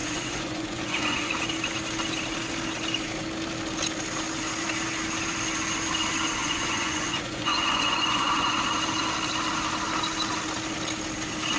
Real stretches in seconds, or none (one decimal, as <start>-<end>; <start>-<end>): 1.3-6.4; 8.6-11.6